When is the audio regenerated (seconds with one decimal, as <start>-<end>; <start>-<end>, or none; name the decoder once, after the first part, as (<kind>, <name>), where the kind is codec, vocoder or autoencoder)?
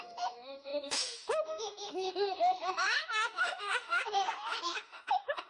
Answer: 0.0-5.5 (autoencoder, DAC-VAE)